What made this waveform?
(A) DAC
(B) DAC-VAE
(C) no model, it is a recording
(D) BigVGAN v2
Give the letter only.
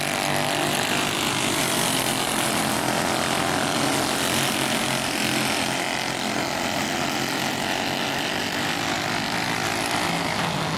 C